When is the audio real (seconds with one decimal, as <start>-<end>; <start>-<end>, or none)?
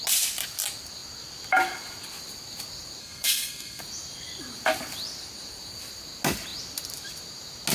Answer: 0.0-3.0; 3.8-7.7